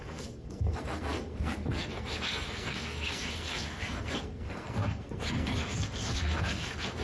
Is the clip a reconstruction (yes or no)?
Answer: yes